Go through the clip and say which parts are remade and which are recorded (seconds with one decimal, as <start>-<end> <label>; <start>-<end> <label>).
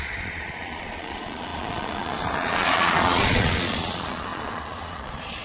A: 0.0-5.4 remade